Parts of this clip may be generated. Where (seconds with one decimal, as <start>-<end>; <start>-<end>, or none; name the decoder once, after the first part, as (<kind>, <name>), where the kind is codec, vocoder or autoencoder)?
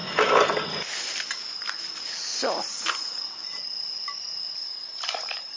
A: none